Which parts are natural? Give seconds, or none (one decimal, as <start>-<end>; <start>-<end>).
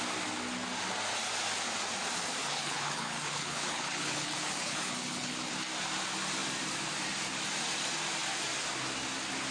0.0-2.4; 5.5-9.5